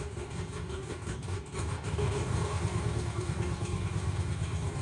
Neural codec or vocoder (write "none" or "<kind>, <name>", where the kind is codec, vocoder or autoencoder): codec, DAC